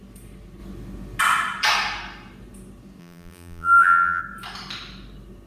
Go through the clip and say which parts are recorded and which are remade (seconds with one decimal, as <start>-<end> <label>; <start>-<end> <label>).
0.0-3.0 recorded; 3.0-4.2 remade; 4.2-5.5 recorded